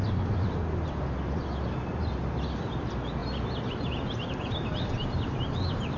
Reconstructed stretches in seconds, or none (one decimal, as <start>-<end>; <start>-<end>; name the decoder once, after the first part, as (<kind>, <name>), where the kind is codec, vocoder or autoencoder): none